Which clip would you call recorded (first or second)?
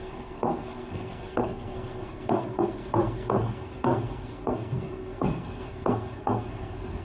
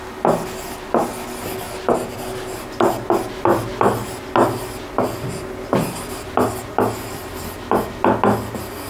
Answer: second